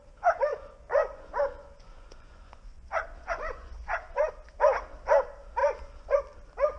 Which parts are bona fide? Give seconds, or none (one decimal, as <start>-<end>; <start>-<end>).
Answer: 0.0-0.5; 4.3-5.6; 6.2-6.8